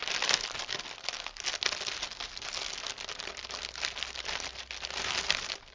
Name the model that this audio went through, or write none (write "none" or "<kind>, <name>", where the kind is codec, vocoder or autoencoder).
none